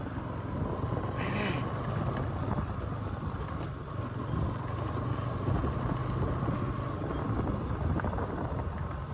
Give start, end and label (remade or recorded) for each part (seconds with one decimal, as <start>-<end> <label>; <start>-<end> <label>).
0.0-9.1 recorded